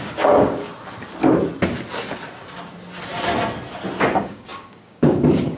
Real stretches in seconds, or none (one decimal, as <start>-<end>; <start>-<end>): 0.7-4.1